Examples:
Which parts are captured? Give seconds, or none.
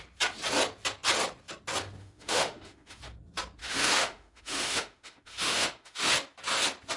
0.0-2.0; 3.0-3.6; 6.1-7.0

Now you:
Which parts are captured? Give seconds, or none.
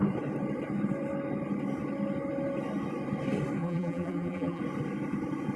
0.0-3.6; 4.6-5.6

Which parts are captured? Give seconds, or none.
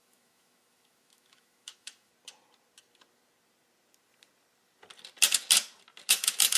2.1-6.1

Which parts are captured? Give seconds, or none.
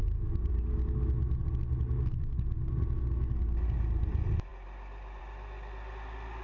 0.0-6.4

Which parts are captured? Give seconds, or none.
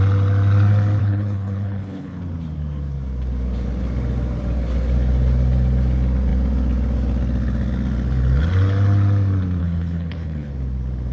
0.0-1.0; 2.2-9.6; 10.5-11.1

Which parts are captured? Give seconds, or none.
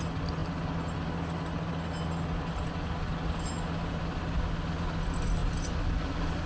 0.0-6.5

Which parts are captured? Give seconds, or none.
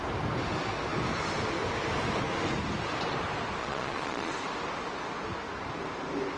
0.0-3.6; 4.3-6.4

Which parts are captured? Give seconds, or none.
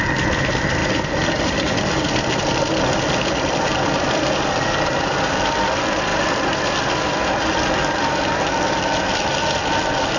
0.0-0.8; 4.6-6.1; 7.3-10.2